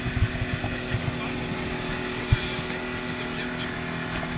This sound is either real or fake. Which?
real